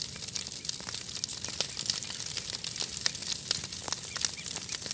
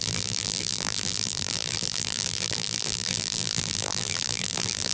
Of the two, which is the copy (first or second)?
second